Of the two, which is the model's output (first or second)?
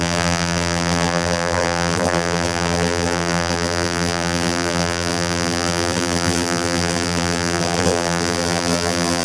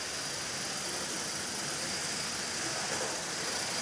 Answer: first